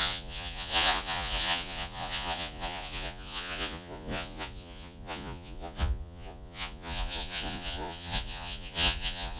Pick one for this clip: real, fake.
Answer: fake